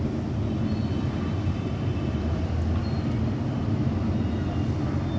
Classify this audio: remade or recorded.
recorded